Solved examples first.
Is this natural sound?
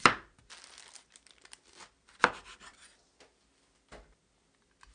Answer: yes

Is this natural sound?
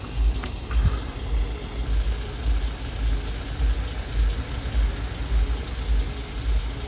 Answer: yes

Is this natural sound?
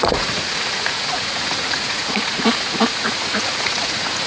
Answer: no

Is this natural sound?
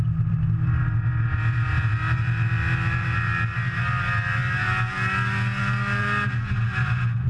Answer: yes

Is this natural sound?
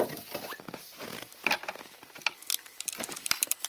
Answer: no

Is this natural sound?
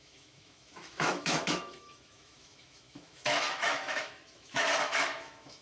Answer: no